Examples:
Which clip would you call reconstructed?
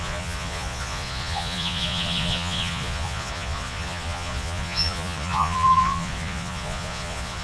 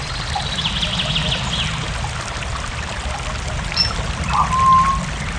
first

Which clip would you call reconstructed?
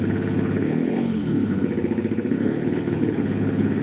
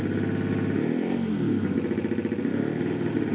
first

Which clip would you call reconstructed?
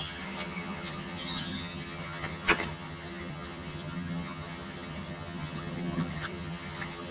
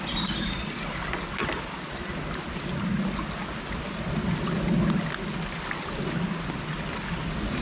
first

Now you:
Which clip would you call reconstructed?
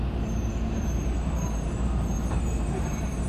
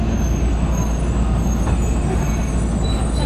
first